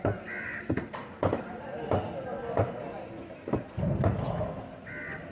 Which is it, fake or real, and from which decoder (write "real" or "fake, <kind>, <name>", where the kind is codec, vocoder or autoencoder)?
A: real